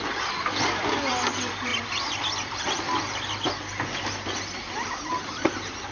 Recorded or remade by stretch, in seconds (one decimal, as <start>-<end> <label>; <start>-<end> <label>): 0.0-5.9 recorded